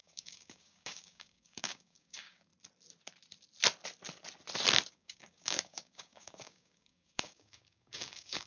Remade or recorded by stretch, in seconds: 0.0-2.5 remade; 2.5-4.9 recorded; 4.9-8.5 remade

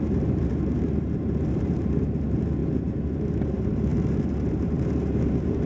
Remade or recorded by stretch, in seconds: 0.0-5.7 remade

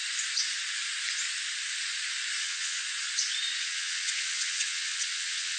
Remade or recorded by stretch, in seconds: 0.0-2.4 recorded; 2.4-2.8 remade; 2.8-3.6 recorded; 3.6-5.6 remade

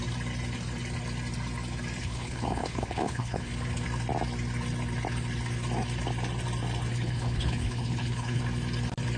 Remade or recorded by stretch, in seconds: 0.0-2.0 recorded; 2.0-3.5 remade; 3.5-6.9 recorded; 6.9-8.4 remade; 8.4-9.2 recorded

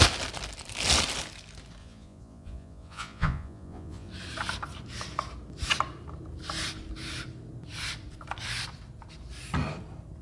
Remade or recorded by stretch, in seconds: 0.0-1.8 recorded; 1.8-4.1 remade; 4.1-10.2 recorded

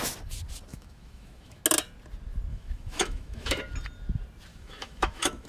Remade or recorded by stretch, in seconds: 0.0-0.7 recorded; 0.7-1.6 remade; 1.6-2.5 recorded; 2.5-3.6 remade; 3.6-4.5 recorded; 4.5-5.5 remade